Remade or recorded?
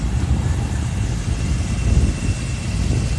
recorded